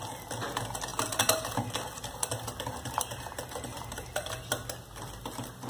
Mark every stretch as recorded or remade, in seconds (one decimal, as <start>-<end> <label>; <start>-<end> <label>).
0.0-5.7 recorded